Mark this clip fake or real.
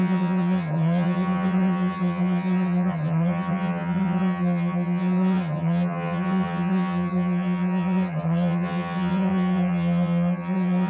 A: fake